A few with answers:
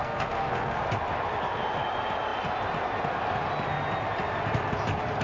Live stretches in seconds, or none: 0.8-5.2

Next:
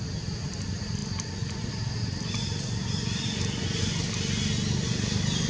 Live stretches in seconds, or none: 0.0-5.5